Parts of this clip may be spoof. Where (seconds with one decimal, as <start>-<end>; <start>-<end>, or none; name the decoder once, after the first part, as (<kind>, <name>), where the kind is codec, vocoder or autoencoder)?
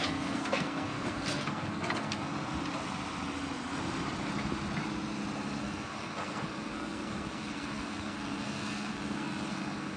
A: 0.0-2.3 (codec, SNAC); 5.6-10.0